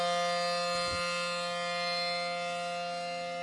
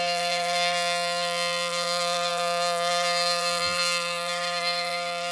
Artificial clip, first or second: second